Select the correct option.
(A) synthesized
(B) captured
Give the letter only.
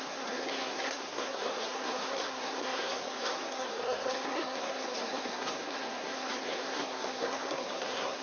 A